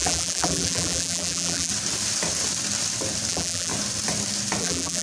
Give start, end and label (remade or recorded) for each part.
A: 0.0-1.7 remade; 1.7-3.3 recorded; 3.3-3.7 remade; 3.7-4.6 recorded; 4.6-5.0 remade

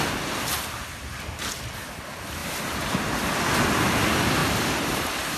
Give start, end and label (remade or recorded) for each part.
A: 0.0-2.4 recorded; 2.4-2.9 remade; 2.9-4.4 recorded; 4.4-5.0 remade; 5.0-5.4 recorded